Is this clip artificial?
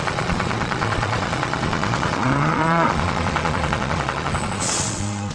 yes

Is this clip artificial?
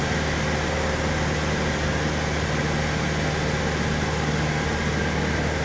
no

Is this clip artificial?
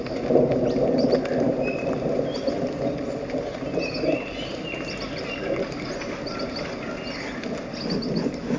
no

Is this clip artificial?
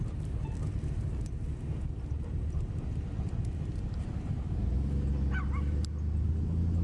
no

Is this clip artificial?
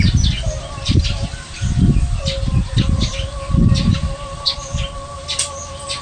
no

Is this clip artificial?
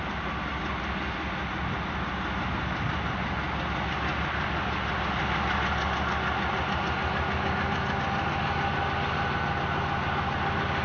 no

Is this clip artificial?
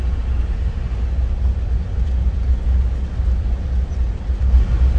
no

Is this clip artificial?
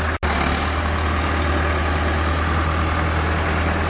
no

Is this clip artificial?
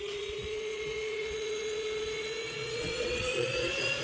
yes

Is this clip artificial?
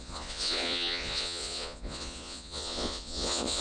yes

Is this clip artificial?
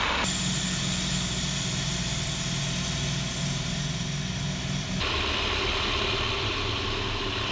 no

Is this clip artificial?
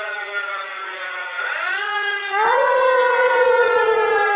yes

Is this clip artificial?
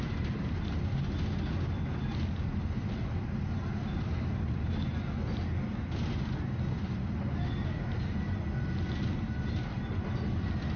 no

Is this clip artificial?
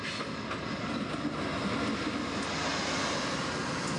no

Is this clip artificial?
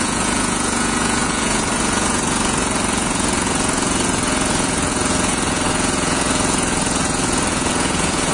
yes